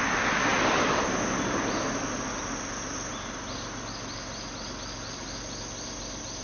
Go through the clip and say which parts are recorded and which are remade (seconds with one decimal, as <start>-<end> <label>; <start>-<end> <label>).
0.0-6.4 recorded